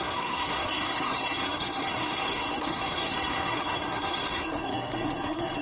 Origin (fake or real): fake